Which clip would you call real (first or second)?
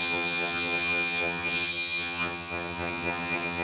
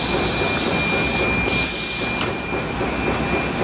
second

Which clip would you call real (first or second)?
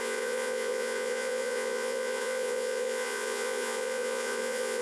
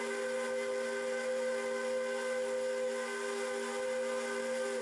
second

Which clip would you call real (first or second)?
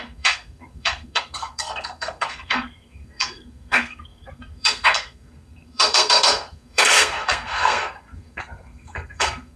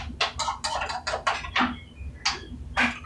second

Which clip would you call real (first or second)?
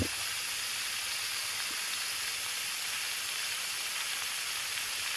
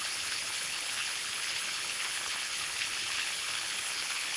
first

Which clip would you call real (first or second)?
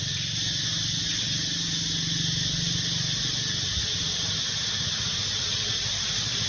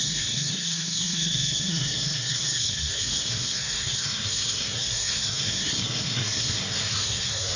first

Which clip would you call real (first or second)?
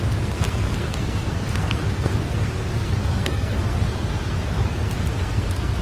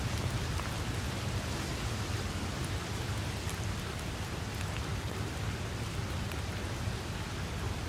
second